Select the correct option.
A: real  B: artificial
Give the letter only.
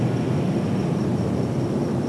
B